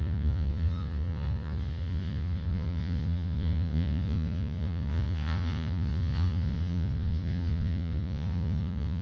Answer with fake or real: fake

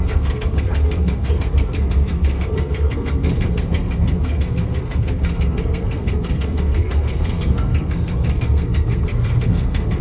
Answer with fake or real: fake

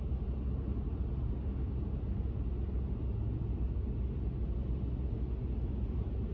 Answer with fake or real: real